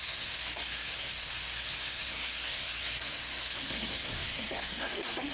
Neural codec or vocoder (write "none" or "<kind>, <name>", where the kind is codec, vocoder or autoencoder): codec, SNAC